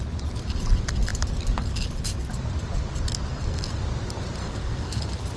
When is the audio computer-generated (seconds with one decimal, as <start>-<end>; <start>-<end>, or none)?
3.3-3.8; 4.4-5.0

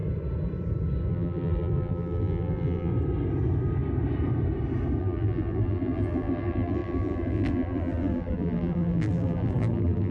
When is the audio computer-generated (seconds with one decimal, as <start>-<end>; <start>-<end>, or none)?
1.1-2.9; 5.0-10.1

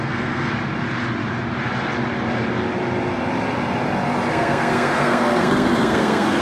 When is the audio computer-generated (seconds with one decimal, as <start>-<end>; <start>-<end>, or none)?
0.0-0.5; 4.3-6.4